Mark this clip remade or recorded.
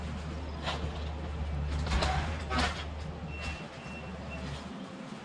recorded